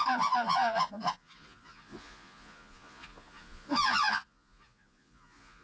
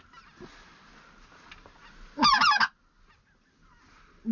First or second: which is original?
second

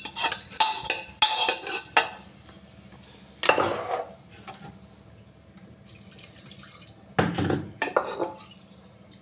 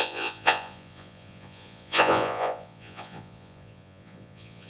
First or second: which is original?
first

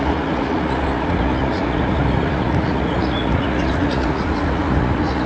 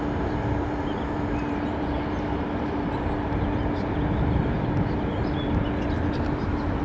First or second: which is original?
second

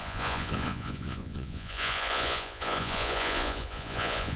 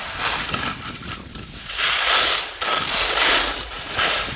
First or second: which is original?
second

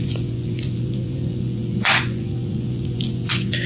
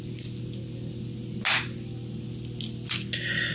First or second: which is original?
second